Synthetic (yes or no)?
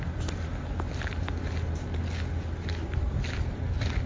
no